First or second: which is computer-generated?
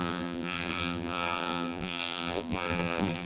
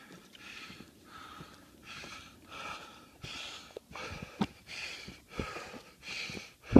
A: first